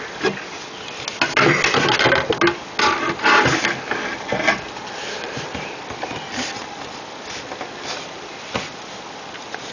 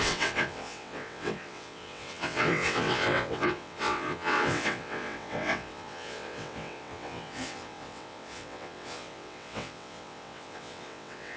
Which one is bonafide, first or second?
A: first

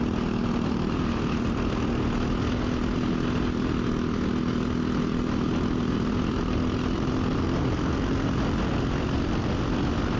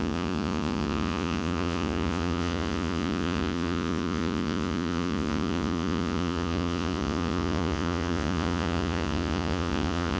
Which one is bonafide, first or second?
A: first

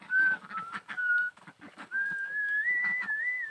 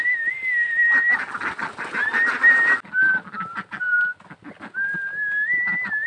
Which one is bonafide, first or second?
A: second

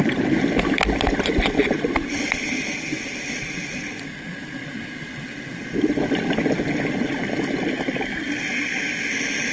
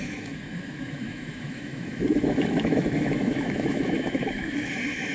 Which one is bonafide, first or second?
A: first